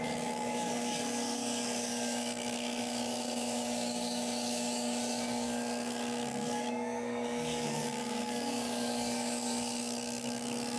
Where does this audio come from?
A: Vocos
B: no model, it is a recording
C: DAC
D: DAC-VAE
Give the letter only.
C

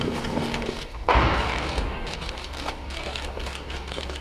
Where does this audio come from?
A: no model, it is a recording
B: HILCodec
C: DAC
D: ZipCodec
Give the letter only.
C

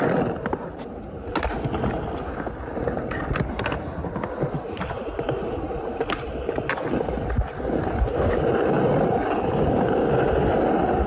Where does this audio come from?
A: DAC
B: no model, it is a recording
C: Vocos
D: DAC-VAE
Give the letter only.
B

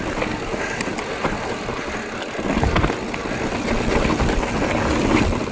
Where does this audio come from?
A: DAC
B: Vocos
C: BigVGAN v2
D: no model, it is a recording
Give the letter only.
D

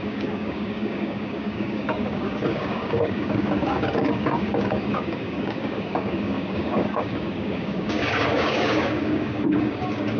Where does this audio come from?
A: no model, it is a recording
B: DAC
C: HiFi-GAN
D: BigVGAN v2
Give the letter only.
B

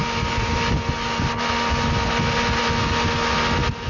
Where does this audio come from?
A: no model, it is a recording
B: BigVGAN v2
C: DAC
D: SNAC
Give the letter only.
A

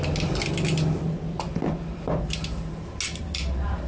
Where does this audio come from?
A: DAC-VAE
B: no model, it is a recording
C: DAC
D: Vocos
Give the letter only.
B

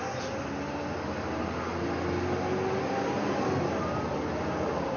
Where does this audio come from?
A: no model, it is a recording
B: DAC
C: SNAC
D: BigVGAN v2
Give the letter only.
A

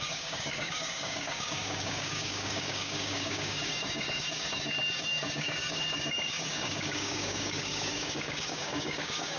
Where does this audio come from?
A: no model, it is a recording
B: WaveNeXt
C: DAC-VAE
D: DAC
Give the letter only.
D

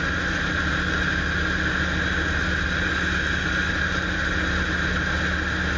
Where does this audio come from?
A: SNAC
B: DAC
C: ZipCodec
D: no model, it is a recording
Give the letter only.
D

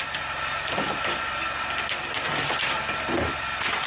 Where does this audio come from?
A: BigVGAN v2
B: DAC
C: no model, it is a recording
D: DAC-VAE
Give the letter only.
C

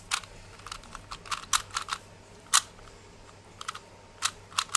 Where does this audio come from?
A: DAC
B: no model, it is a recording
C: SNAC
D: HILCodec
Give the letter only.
B